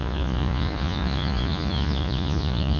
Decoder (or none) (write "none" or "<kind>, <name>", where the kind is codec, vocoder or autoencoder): vocoder, Vocos